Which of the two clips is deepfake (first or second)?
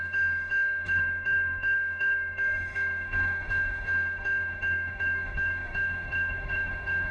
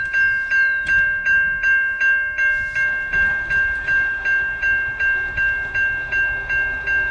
first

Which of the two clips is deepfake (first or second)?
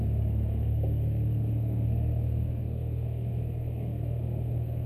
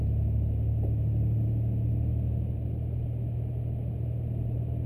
first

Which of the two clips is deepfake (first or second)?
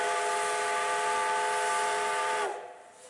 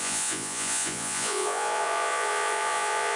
second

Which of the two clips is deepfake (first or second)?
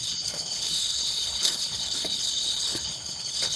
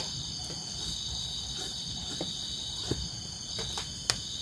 first